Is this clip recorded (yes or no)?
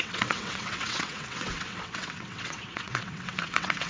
no